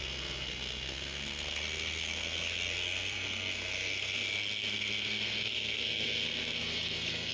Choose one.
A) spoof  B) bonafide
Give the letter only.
A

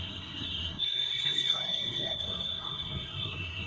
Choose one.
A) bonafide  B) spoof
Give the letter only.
B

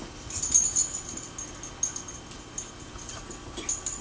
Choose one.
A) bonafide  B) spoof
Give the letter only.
A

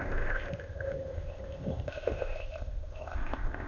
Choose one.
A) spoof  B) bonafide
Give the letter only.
A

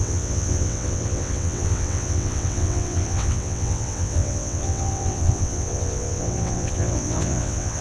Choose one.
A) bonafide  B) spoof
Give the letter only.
B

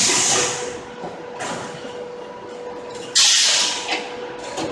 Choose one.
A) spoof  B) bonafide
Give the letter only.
B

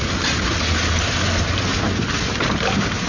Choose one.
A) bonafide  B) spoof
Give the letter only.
A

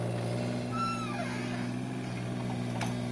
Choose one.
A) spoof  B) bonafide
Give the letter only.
B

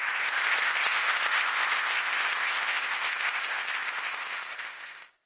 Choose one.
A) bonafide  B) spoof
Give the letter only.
B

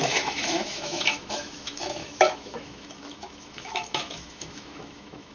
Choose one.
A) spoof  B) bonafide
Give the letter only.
A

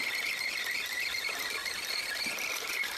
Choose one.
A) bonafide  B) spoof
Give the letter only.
A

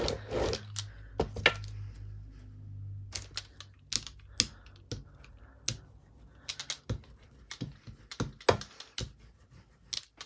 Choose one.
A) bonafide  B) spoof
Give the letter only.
A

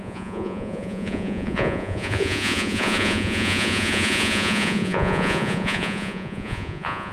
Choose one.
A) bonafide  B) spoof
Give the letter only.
B